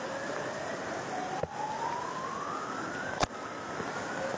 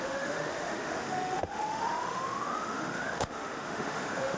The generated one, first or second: second